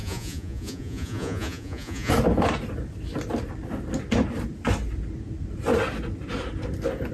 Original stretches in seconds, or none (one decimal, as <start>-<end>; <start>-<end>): 2.1-7.1